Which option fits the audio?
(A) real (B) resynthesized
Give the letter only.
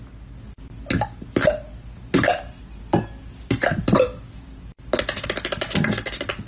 A